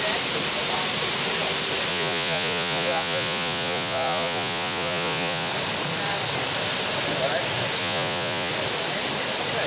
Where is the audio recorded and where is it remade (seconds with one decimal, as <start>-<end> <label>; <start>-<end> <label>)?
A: 0.0-1.9 recorded; 1.9-5.5 remade; 5.5-7.8 recorded; 7.8-8.5 remade; 8.5-9.7 recorded